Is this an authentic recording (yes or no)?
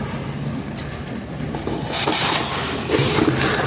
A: yes